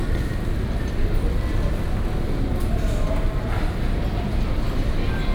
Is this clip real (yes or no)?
yes